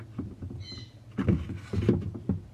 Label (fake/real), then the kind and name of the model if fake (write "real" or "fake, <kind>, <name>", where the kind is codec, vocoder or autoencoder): real